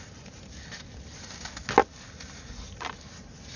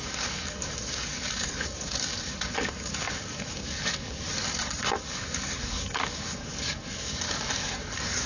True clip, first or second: first